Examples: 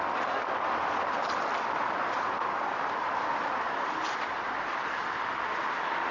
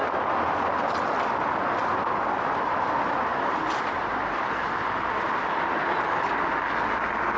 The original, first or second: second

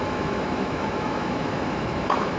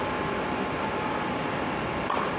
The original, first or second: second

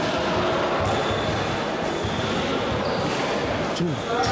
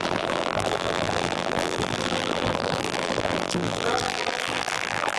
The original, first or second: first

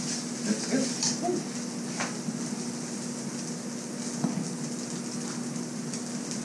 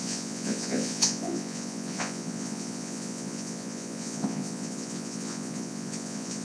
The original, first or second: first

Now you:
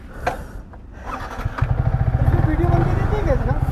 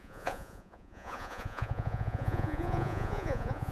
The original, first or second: first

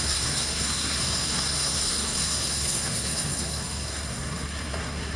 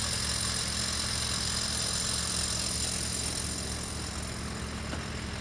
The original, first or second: second